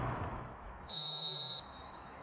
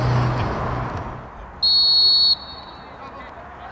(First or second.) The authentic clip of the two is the second